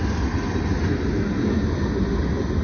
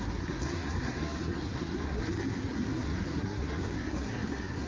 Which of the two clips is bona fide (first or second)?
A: first